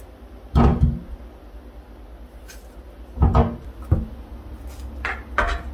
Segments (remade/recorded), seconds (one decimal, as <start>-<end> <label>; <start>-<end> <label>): 0.0-5.7 recorded